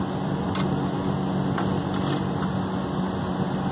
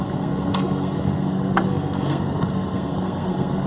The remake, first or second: second